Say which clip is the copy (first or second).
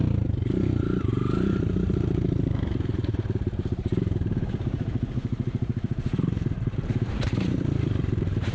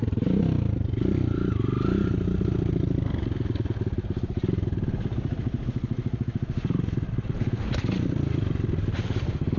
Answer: first